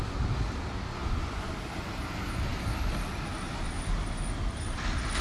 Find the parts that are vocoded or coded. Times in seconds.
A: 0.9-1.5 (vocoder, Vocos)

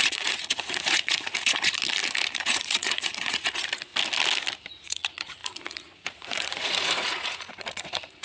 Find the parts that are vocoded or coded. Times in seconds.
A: 0.0-1.8 (vocoder, Vocos); 2.4-3.9; 4.7-8.2

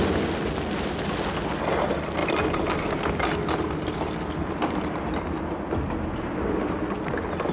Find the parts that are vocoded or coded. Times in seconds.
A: none

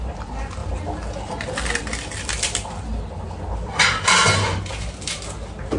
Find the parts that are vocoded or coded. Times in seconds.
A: none